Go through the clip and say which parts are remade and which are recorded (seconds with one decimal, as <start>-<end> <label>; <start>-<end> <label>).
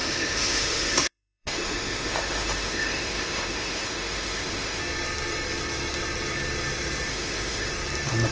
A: 0.0-4.8 remade; 4.8-7.1 recorded; 7.1-7.7 remade; 7.7-8.3 recorded